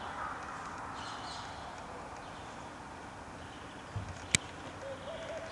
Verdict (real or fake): real